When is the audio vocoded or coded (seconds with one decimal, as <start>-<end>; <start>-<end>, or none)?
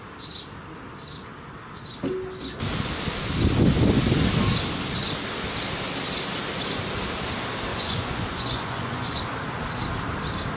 7.7-9.2